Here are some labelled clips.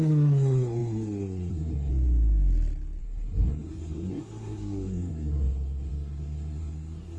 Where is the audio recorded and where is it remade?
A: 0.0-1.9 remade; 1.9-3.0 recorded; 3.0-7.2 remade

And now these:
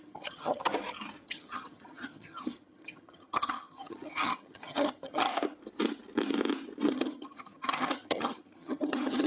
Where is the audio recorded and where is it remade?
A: 0.0-0.7 remade; 0.7-1.3 recorded; 1.3-5.3 remade; 5.3-6.9 recorded; 6.9-9.3 remade

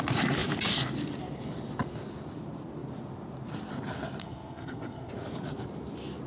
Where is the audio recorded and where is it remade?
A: 0.0-4.2 recorded; 4.2-5.1 remade; 5.1-6.3 recorded